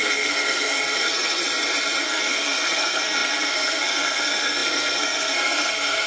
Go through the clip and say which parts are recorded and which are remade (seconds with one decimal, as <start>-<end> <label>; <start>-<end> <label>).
0.0-1.4 remade; 1.4-2.0 recorded; 2.0-6.1 remade